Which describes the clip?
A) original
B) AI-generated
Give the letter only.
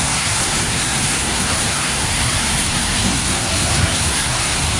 B